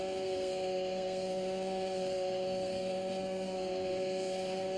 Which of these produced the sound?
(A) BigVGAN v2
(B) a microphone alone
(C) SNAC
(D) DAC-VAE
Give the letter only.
C